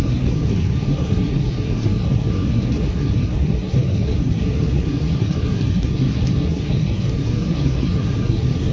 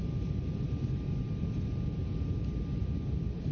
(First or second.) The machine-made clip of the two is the first